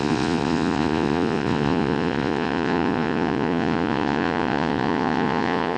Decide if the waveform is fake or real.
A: fake